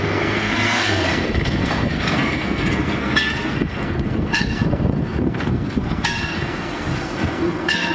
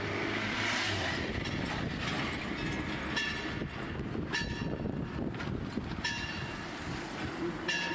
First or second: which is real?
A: second